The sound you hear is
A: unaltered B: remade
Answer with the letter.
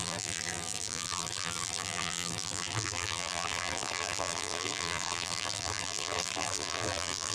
B